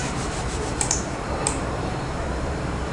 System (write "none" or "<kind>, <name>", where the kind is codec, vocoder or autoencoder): vocoder, BigVGAN v2